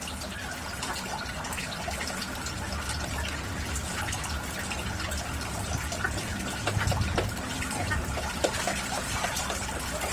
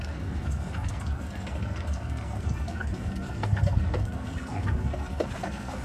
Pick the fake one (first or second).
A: second